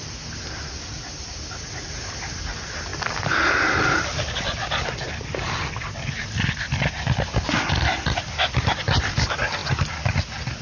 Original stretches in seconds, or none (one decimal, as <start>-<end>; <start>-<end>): 0.0-10.6